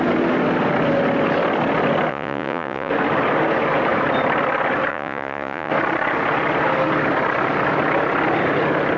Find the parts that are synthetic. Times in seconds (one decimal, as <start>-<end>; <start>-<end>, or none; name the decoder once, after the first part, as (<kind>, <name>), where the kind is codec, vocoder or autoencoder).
2.1-2.9 (vocoder, Vocos); 4.9-5.7